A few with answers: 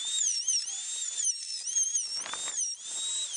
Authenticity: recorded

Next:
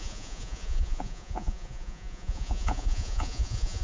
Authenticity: remade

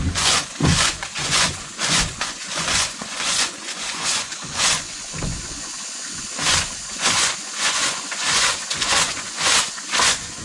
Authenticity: remade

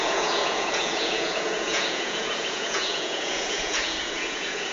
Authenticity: remade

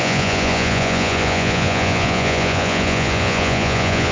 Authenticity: remade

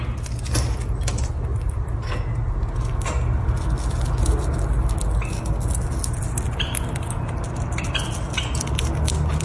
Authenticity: recorded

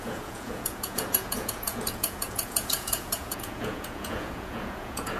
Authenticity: remade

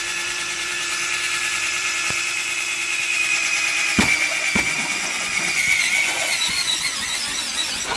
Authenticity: remade